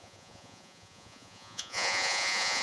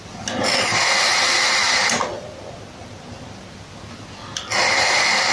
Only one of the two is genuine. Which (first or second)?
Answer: second